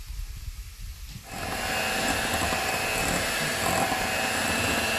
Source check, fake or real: real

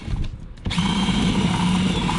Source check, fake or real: fake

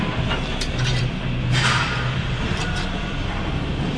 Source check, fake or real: fake